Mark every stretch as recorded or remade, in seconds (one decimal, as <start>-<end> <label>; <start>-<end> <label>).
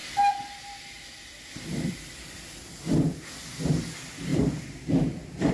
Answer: 0.0-2.5 remade; 2.5-4.3 recorded; 4.3-5.5 remade